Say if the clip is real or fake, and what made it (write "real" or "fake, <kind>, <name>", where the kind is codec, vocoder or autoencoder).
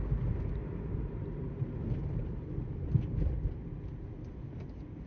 real